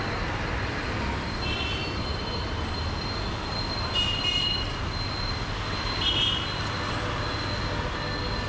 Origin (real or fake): real